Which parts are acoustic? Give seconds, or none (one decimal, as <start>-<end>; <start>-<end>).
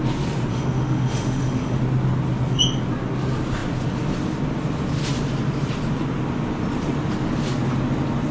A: 0.0-0.5; 1.8-8.3